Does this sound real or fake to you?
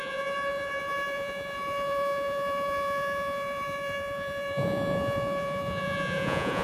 fake